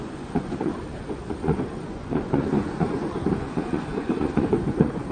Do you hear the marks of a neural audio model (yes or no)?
yes